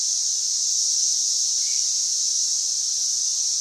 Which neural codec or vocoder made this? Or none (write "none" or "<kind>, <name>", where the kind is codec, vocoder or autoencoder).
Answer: none